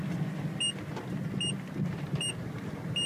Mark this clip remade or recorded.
recorded